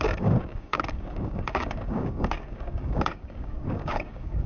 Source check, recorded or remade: remade